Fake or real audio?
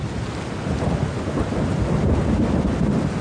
real